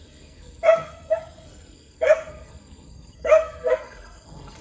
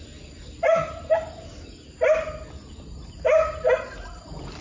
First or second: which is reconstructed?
first